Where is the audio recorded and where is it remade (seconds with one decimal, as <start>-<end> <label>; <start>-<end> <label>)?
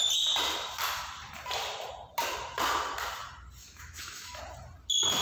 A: 0.0-3.6 recorded; 3.6-4.4 remade; 4.4-5.2 recorded